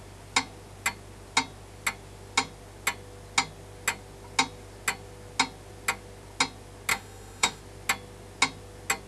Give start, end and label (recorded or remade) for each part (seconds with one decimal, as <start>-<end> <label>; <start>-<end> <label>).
0.0-6.9 recorded; 6.9-7.6 remade; 7.6-9.1 recorded